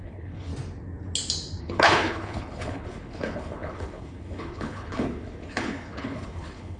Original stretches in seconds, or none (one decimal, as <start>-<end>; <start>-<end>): 0.5-1.6